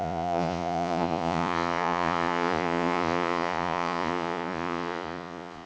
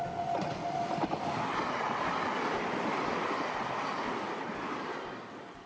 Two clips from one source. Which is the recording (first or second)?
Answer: second